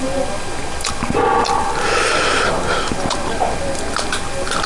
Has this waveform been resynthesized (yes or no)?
no